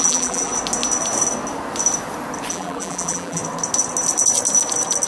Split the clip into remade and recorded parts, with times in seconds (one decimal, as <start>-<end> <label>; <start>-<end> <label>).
0.0-0.5 remade; 0.5-2.5 recorded; 2.5-3.4 remade; 3.4-5.1 recorded